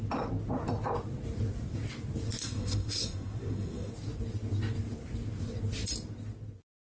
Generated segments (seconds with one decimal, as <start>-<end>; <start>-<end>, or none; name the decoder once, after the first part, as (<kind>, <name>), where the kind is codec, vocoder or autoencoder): 2.4-3.9 (codec, SNAC)